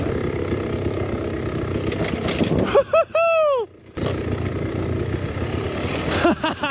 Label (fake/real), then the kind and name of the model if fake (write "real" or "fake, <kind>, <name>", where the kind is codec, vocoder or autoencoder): real